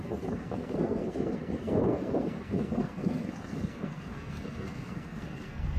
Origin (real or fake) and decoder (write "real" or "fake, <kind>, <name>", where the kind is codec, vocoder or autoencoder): fake, codec, SNAC